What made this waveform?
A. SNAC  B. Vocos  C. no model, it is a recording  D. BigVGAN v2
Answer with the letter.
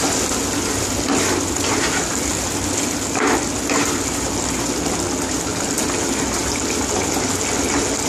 C